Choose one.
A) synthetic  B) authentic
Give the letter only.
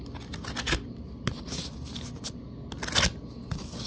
B